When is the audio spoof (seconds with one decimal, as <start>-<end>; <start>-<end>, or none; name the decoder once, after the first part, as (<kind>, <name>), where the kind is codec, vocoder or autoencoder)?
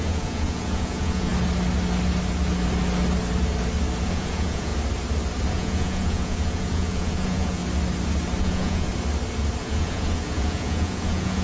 0.0-1.3 (vocoder, Vocos); 4.1-4.7; 5.5-7.6; 8.4-8.9; 9.6-11.4